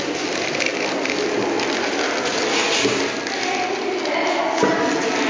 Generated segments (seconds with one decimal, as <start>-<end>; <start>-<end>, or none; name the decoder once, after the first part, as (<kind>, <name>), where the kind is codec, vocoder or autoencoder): none